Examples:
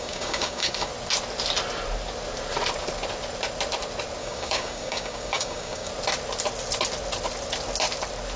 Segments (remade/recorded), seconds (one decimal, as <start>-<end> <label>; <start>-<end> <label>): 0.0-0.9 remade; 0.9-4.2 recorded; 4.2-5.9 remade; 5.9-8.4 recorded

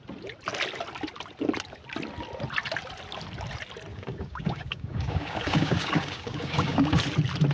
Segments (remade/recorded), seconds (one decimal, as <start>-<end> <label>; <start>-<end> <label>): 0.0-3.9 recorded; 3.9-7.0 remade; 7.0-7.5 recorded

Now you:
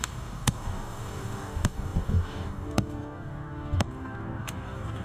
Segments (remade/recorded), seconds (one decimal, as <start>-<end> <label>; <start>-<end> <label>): 0.0-5.0 remade

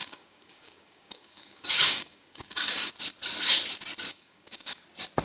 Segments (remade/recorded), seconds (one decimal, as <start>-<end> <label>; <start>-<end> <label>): 0.0-2.9 remade; 2.9-4.1 recorded; 4.1-4.8 remade; 4.8-5.2 recorded

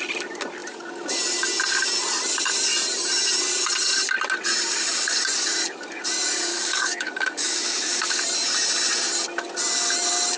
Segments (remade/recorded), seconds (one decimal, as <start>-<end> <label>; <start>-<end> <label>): 0.0-6.5 recorded; 6.5-8.2 remade; 8.2-10.4 recorded

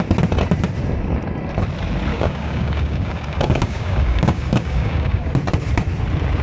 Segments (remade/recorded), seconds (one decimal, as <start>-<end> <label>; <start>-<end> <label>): 0.0-2.1 recorded; 2.1-5.3 remade; 5.3-6.4 recorded